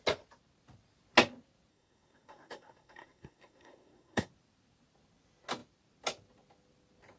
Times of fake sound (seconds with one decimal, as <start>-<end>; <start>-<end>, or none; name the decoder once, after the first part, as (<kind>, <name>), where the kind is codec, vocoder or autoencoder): 1.7-4.3 (codec, SNAC)